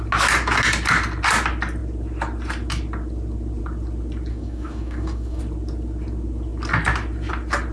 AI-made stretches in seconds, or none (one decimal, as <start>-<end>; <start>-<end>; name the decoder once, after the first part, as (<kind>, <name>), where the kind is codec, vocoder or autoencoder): 4.3-5.4 (codec, DAC)